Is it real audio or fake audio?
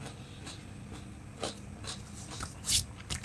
real